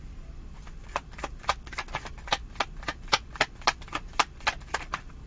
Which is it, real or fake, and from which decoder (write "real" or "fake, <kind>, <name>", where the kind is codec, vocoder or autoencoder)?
real